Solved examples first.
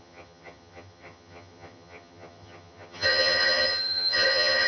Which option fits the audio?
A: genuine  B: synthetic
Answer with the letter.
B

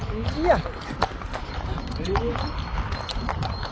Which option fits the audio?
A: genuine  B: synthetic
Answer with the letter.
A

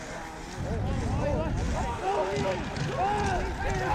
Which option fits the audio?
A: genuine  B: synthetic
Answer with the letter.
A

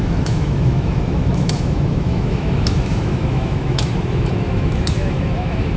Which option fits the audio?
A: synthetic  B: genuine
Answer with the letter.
A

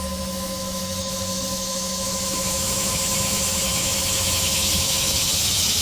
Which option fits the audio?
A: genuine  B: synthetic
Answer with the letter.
B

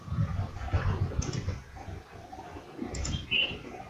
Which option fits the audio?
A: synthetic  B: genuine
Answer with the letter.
B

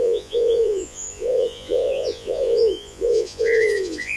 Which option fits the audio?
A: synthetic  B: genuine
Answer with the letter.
A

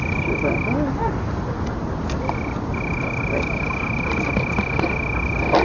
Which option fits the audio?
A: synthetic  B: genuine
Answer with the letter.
B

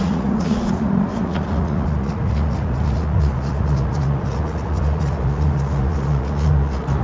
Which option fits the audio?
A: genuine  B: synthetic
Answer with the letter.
B